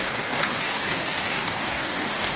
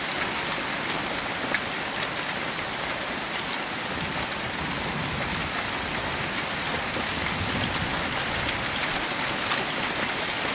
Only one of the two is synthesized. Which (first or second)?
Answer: first